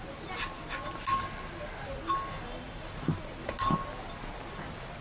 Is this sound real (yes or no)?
yes